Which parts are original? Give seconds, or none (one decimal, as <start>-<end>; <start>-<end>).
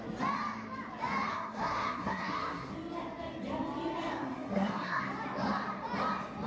0.0-1.3; 2.7-4.1; 5.0-6.5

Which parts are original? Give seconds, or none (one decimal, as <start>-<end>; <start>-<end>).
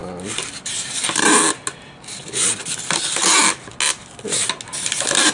0.0-5.3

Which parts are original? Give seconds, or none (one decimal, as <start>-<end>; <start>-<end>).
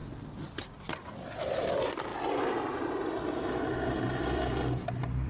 0.0-1.4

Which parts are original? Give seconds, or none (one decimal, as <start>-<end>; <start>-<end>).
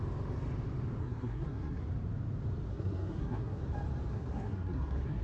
0.0-1.0; 1.8-2.7; 3.6-4.1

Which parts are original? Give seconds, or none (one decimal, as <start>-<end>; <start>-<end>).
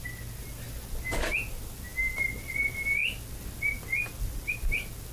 0.0-5.1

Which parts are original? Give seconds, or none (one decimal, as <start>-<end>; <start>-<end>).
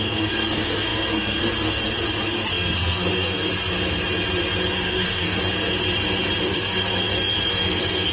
1.8-2.5; 3.5-4.7; 5.4-6.4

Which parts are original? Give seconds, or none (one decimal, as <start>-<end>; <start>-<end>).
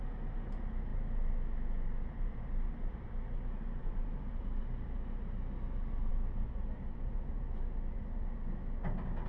0.0-9.3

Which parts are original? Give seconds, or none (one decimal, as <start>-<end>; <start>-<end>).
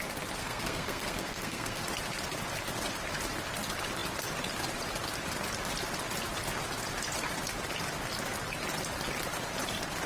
0.0-0.4; 1.8-10.1